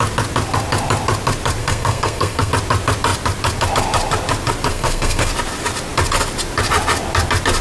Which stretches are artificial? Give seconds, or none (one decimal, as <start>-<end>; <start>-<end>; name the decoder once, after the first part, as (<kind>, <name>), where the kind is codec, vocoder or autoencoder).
1.6-2.5 (codec, SNAC); 4.7-5.3